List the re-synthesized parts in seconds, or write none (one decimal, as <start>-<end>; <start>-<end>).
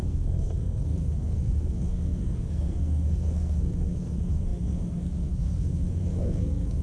0.0-6.8